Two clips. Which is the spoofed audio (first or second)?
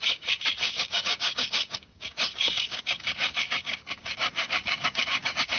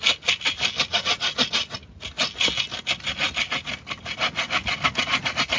first